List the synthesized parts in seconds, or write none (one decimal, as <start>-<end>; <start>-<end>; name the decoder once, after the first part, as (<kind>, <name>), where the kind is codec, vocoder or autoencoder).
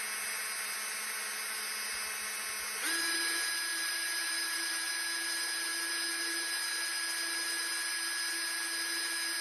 3.7-4.9 (vocoder, BigVGAN v2)